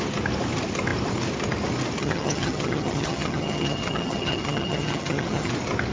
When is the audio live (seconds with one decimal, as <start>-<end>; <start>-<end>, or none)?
0.0-2.0; 5.5-5.9